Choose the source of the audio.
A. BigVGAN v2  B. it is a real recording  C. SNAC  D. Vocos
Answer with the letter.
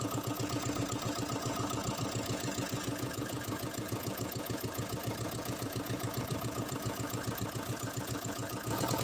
D